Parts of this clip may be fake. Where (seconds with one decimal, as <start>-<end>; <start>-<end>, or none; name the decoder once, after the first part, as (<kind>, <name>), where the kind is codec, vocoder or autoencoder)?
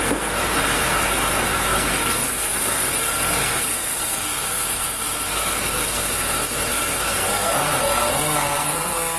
0.0-9.2 (codec, SNAC)